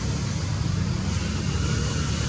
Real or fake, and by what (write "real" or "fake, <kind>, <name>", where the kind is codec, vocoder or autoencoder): real